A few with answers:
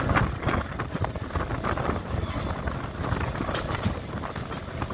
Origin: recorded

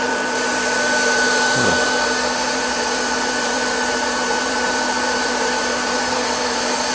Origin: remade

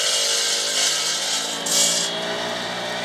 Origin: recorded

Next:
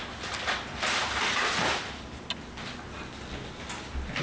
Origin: recorded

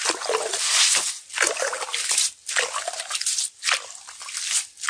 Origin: recorded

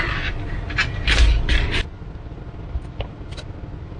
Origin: recorded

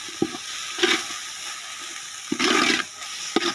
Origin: recorded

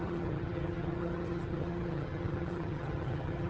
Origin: remade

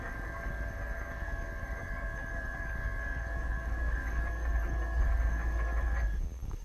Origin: remade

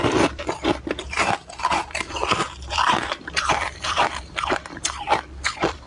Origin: remade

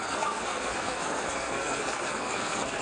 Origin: remade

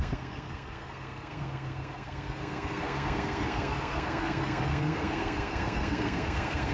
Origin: remade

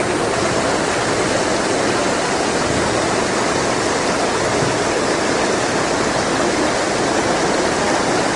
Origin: recorded